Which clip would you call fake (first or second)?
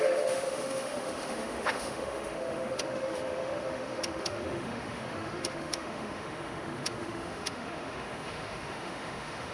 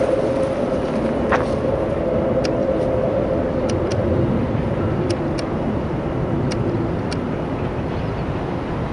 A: first